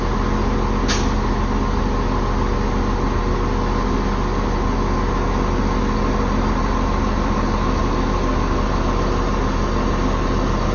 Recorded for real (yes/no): yes